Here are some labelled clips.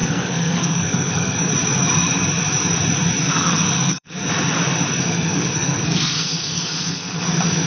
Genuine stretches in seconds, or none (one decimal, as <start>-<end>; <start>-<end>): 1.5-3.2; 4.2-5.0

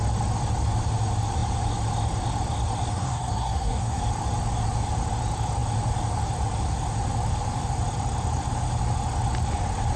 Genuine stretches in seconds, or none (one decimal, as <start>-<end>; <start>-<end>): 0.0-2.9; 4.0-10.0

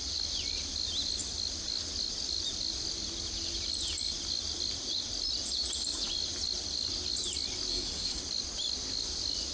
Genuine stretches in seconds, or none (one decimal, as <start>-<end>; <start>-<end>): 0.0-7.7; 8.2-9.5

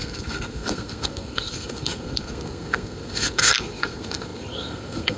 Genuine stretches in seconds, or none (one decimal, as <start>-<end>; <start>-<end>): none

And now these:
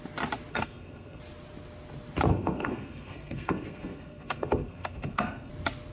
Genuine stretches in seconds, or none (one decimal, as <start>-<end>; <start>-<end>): 0.0-0.5; 1.2-2.3; 5.5-5.9

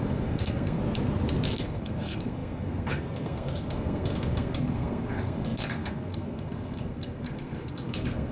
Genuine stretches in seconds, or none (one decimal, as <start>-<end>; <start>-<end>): 0.8-1.5